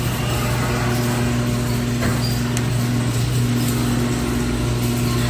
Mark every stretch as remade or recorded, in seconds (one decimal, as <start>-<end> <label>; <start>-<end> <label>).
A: 0.0-5.3 recorded